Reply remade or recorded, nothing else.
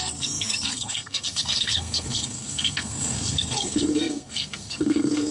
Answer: remade